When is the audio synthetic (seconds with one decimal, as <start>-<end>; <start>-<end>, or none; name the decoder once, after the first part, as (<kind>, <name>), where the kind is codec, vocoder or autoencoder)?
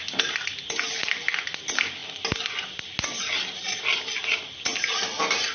none